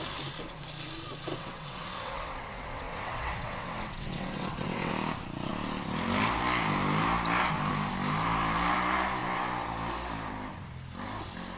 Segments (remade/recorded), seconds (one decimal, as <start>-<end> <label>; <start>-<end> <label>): 0.0-1.3 recorded; 1.3-4.9 remade; 4.9-11.6 recorded